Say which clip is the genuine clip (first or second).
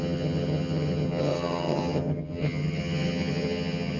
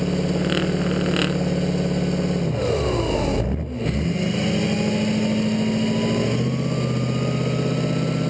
second